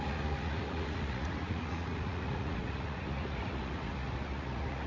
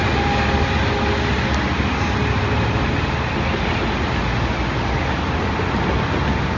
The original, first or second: second